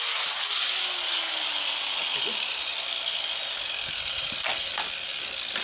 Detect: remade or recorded recorded